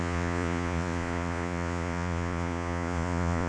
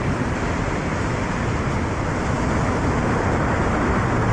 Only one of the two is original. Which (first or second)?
second